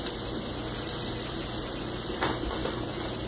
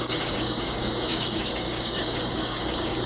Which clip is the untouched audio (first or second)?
first